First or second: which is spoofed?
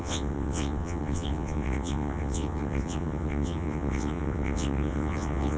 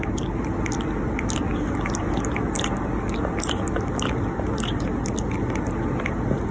first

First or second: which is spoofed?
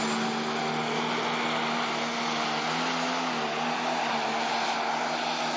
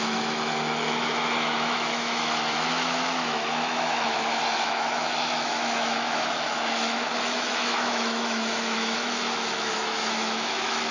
second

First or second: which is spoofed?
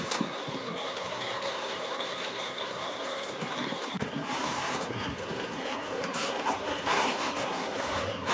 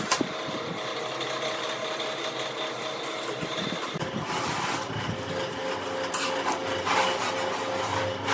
first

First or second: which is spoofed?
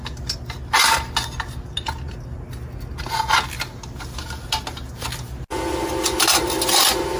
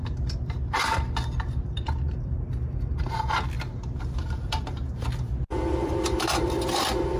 second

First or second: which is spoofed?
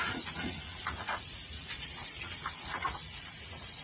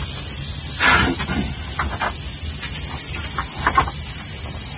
first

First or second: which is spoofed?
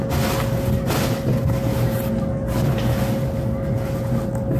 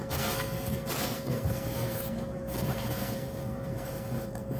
second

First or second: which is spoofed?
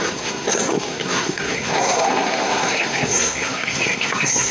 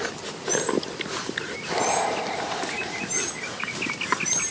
first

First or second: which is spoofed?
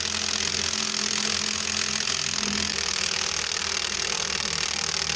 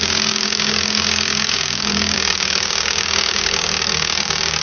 second